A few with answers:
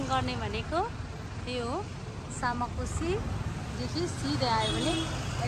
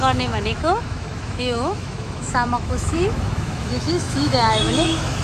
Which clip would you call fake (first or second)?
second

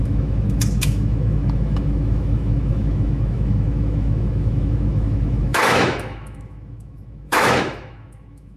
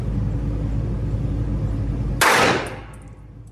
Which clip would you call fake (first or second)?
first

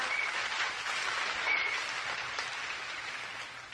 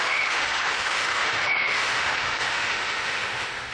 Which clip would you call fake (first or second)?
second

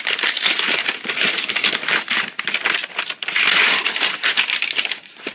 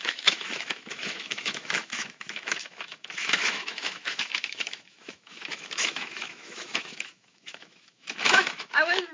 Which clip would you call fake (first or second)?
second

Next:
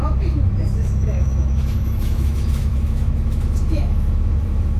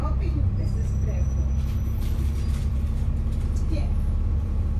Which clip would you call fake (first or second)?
first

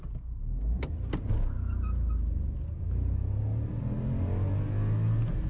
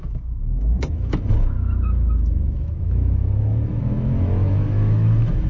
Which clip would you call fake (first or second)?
second